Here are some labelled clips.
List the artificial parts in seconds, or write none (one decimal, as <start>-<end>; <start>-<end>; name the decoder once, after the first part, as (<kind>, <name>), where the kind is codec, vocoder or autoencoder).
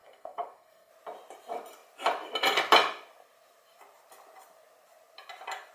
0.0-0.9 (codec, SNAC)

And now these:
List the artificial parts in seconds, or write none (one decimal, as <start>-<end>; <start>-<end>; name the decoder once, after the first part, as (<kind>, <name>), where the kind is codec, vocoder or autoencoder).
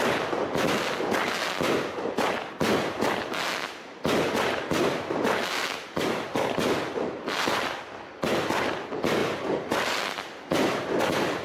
none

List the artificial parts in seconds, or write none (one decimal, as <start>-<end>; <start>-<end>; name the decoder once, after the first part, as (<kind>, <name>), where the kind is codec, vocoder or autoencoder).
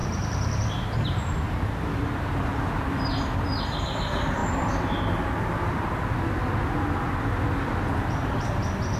0.0-1.5 (vocoder, BigVGAN v2)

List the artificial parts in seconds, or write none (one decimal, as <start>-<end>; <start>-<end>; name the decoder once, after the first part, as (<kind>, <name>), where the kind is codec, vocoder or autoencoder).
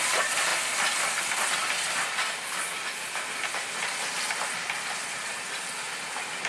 none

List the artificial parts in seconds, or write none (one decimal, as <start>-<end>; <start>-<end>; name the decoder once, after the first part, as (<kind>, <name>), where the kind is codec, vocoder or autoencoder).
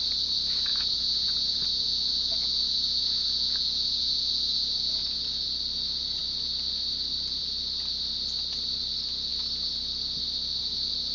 0.7-5.4 (vocoder, Vocos)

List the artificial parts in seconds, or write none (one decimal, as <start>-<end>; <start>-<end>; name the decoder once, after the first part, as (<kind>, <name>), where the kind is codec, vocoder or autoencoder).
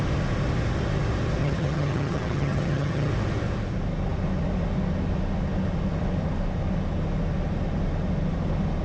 1.4-3.1 (vocoder, HiFi-GAN)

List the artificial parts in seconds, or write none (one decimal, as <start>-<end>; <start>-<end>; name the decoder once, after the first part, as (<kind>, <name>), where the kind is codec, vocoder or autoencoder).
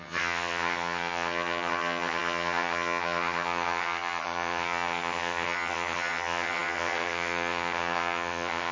0.0-8.7 (vocoder, HiFi-GAN)